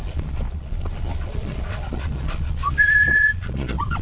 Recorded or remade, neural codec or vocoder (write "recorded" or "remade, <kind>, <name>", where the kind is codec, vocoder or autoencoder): remade, vocoder, Vocos